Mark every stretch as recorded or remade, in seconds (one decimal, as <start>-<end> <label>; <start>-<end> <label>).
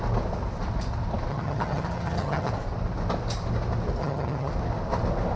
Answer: 0.0-1.3 recorded; 1.3-2.5 remade; 2.5-4.0 recorded; 4.0-4.5 remade; 4.5-5.4 recorded